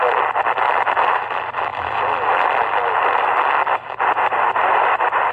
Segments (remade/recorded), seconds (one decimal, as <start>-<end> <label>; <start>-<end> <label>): 0.0-5.3 recorded